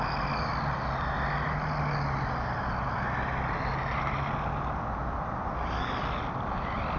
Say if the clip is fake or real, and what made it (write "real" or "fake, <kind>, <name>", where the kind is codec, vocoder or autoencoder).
real